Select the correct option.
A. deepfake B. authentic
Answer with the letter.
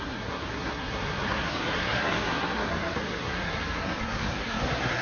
A